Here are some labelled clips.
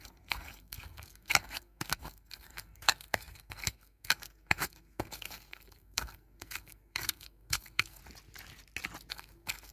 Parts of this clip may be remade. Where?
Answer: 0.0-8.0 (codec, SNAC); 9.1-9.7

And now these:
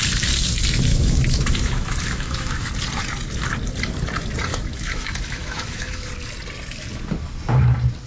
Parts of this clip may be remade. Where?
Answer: 0.9-2.7 (autoencoder, DAC-VAE); 4.5-6.1

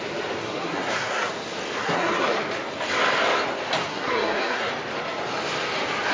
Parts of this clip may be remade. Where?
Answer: 0.4-1.3 (codec, SNAC); 1.8-2.4; 3.9-4.7

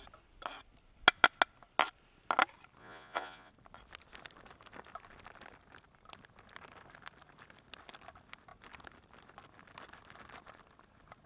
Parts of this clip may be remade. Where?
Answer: 2.8-3.5 (vocoder, Vocos)

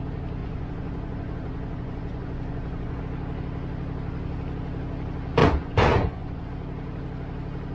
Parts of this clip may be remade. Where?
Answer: 0.4-3.0 (vocoder, Vocos); 5.4-6.5

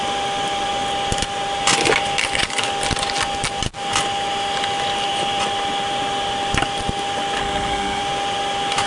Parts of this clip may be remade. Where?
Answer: 7.4-8.0 (codec, SNAC)

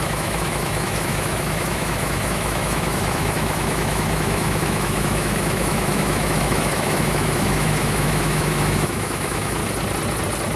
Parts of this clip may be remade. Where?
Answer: 0.0-9.6 (autoencoder, DAC-VAE)

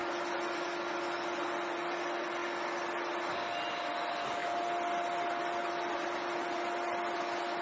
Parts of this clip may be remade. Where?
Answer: none